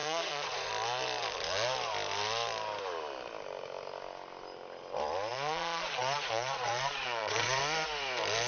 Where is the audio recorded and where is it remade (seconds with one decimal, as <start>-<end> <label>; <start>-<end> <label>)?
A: 0.0-0.7 remade; 0.7-5.3 recorded; 5.3-7.6 remade; 7.6-8.5 recorded